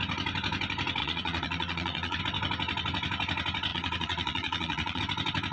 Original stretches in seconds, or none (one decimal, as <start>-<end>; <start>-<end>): 0.0-1.0; 2.2-3.7; 5.0-5.5